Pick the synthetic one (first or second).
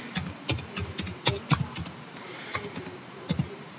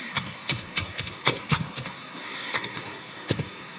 second